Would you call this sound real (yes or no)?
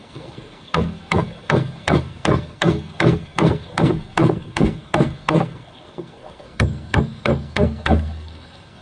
no